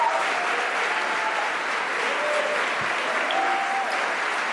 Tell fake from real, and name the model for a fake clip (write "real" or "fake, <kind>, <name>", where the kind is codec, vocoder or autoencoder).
real